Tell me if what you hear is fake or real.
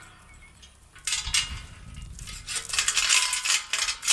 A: real